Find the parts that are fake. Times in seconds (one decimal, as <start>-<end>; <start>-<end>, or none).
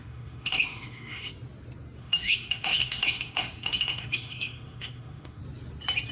0.0-1.3; 2.0-5.4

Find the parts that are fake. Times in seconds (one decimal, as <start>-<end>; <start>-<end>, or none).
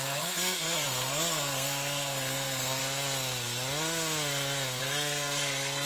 0.0-2.8; 4.8-5.9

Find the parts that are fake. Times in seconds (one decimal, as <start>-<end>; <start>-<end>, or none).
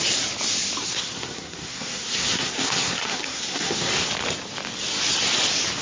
0.8-3.9